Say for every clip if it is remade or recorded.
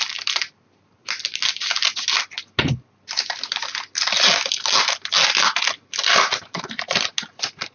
recorded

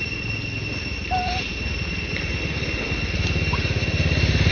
recorded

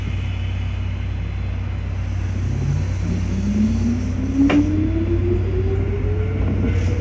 recorded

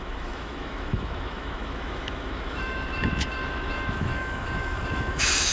remade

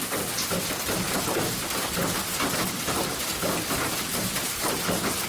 recorded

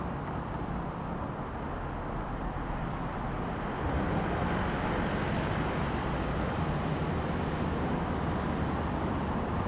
recorded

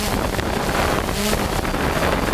recorded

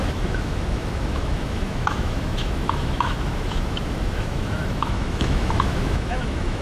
remade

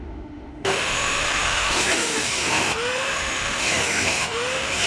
remade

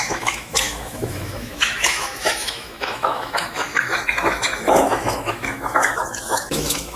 remade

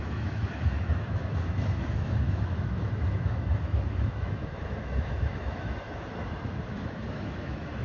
remade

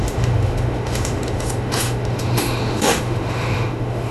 remade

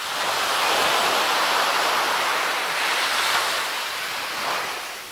recorded